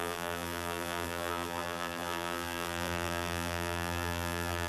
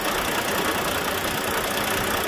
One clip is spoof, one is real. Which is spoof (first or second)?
first